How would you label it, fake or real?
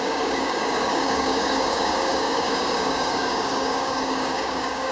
fake